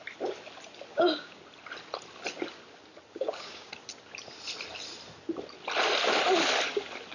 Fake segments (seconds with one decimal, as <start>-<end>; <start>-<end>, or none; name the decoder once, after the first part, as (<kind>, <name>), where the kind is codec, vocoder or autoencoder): 0.9-1.4 (codec, DAC); 3.1-3.7